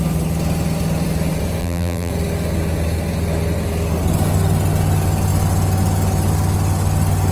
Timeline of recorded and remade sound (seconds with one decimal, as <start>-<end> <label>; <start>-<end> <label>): 0.0-1.6 recorded; 1.6-2.1 remade; 2.1-7.3 recorded

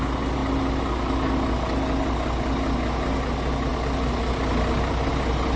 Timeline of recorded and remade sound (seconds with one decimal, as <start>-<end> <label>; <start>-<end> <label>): 0.0-5.6 recorded

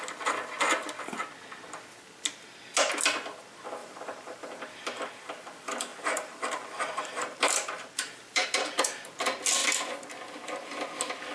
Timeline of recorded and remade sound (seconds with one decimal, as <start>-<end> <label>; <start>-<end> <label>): 0.0-3.8 recorded; 3.8-4.5 remade; 4.5-5.9 recorded; 5.9-8.8 remade; 8.8-11.3 recorded

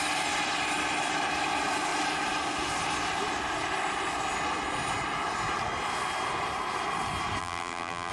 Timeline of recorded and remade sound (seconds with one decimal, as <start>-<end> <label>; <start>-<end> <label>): 0.0-7.4 recorded; 7.4-8.1 remade